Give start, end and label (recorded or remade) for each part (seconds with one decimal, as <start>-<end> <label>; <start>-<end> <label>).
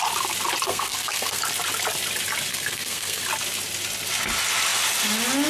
0.0-0.7 recorded; 0.7-1.4 remade; 1.4-2.5 recorded; 2.5-3.2 remade; 3.2-5.5 recorded